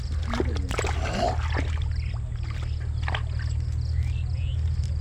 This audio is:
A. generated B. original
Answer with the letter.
B